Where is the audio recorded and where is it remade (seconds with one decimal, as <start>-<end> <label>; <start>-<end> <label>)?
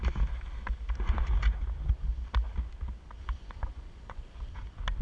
0.0-3.2 recorded; 3.2-4.5 remade; 4.5-5.0 recorded